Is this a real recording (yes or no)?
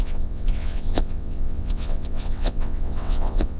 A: no